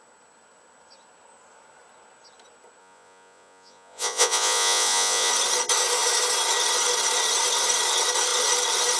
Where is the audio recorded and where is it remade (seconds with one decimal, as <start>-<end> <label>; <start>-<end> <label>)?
0.0-2.8 recorded; 2.8-5.3 remade; 5.3-9.0 recorded